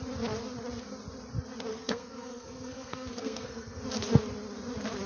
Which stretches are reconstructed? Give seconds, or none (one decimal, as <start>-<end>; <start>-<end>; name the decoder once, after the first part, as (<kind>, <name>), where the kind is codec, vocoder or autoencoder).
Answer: 1.7-3.8 (codec, SNAC)